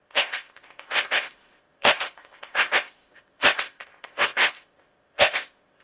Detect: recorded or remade remade